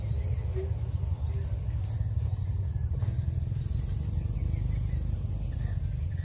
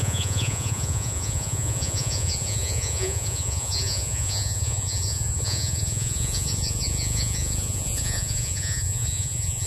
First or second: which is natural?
first